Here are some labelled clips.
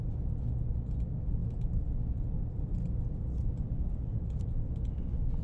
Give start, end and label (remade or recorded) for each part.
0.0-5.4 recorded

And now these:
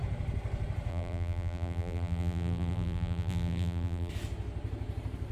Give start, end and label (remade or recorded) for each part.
0.0-0.9 recorded; 0.9-4.1 remade; 4.1-5.3 recorded